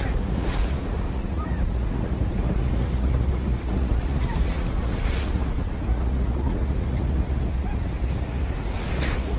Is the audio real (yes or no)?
no